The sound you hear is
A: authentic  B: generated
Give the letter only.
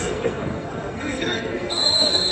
B